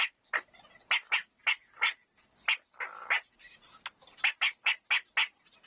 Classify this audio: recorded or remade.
recorded